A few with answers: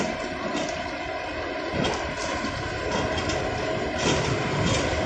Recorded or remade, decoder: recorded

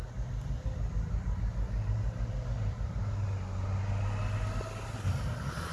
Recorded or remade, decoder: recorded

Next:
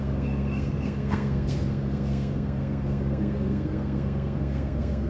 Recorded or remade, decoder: remade, codec, SNAC